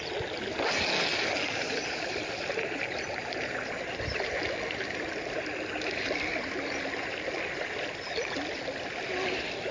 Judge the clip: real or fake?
real